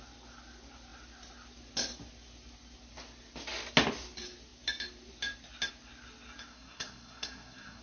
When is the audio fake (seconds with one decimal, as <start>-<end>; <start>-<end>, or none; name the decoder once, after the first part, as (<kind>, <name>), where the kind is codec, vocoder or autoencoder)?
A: 6.5-7.8 (codec, SNAC)